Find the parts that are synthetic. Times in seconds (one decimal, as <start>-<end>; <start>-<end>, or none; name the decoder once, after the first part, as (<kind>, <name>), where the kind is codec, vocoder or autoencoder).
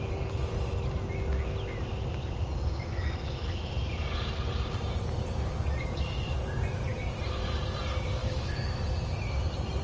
2.7-3.7 (autoencoder, DAC-VAE); 8.2-8.8